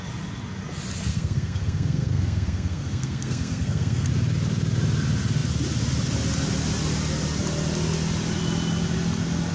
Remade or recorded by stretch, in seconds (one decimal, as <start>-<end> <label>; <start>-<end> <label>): 0.0-1.1 recorded; 1.1-4.1 remade; 4.1-9.5 recorded